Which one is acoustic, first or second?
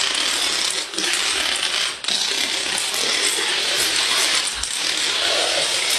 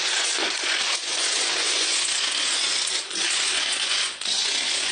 first